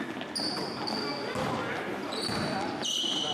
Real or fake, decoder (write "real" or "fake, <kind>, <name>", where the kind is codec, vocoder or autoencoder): real